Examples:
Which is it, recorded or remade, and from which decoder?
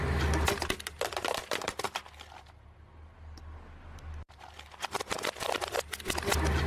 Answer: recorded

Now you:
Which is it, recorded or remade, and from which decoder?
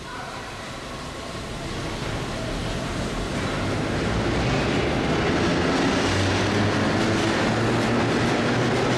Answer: recorded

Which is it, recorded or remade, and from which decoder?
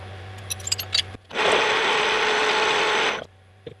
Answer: recorded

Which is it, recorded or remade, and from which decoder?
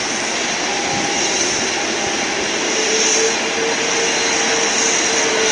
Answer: recorded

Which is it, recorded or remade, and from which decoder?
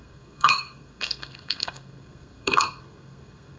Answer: remade, codec, SNAC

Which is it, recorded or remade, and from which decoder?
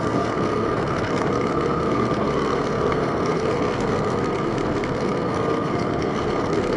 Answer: remade, codec, SNAC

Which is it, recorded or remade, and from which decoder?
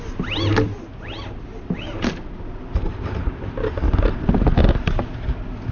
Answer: recorded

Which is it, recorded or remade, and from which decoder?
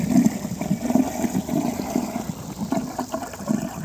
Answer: recorded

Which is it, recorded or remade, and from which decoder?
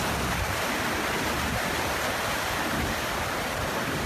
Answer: recorded